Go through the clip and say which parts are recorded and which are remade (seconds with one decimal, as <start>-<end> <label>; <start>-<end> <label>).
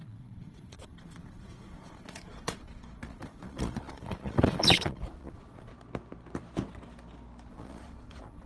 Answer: 0.0-5.7 remade; 5.7-7.5 recorded; 7.5-8.5 remade